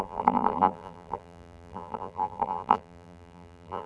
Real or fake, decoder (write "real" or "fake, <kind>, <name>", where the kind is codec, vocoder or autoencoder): fake, vocoder, BigVGAN v2